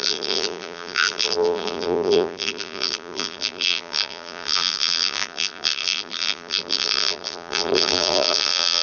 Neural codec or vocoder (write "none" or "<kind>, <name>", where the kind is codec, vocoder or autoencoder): vocoder, BigVGAN v2